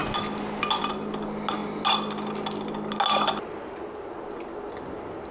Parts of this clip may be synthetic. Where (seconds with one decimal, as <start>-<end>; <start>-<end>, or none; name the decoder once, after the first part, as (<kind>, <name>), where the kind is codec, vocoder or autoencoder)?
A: none